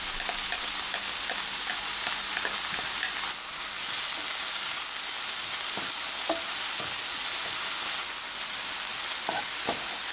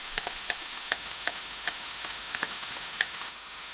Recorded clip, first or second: first